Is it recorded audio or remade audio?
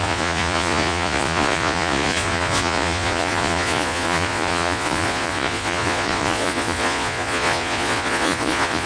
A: remade